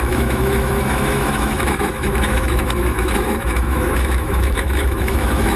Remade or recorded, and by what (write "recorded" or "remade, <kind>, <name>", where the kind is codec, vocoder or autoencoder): remade, autoencoder, DAC-VAE